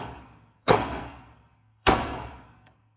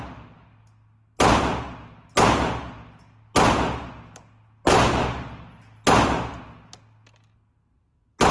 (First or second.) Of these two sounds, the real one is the second